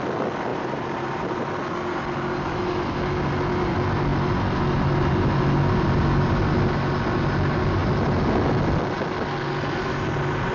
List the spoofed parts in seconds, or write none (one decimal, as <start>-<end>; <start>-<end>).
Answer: 0.5-1.6

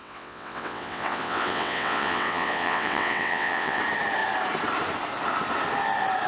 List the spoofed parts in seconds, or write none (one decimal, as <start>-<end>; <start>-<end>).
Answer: 0.0-3.8

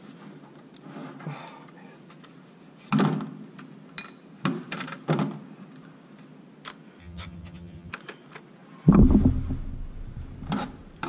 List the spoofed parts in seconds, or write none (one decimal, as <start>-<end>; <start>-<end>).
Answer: 7.0-7.9

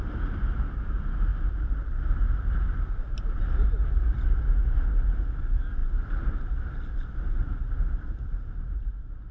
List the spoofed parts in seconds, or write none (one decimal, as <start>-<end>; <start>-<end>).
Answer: none

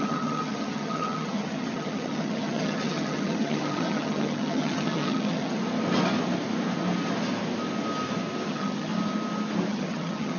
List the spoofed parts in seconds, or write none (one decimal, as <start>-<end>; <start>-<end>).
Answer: 0.0-5.6; 8.5-8.9; 9.7-10.4